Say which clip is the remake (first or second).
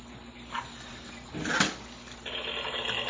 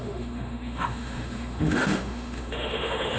second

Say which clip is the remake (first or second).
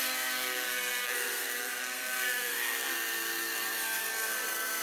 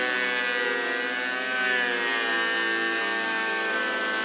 first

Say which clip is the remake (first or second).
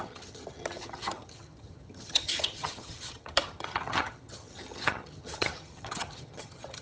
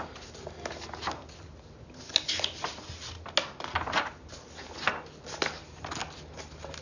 first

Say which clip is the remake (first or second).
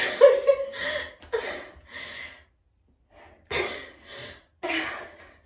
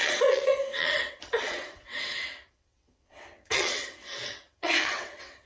second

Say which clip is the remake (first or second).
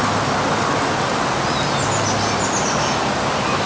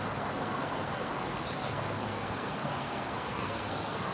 second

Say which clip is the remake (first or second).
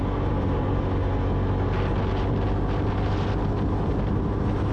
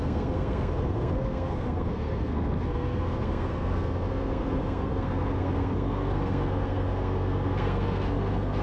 second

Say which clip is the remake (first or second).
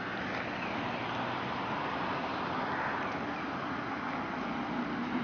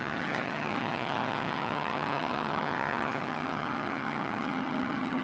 second